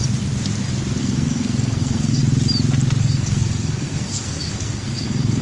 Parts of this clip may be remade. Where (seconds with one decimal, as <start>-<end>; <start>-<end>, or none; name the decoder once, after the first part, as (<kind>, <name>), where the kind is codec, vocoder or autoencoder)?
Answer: 1.0-2.2 (codec, SNAC); 3.0-5.4